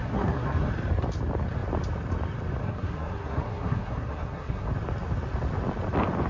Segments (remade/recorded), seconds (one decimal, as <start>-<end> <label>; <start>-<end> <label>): 0.0-0.7 remade; 0.7-2.6 recorded; 2.6-4.7 remade; 4.7-6.3 recorded